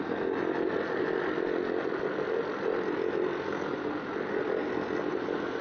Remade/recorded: recorded